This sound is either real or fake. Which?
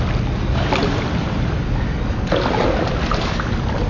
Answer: real